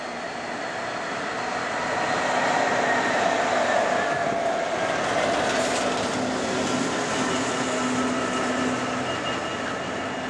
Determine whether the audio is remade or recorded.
recorded